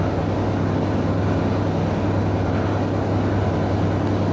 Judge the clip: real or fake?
real